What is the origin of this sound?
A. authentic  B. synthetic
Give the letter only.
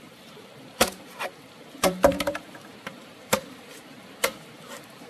B